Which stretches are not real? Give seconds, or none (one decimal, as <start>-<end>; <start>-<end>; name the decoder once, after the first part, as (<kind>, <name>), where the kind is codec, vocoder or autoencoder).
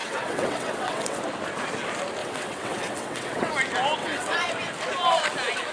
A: 0.0-1.2 (vocoder, WaveNeXt); 2.2-3.5; 4.0-4.5